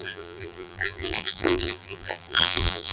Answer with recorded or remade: remade